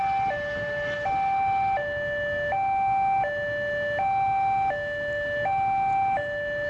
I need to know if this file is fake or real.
real